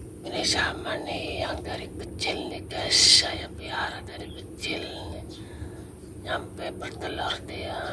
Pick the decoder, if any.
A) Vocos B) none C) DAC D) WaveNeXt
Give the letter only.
B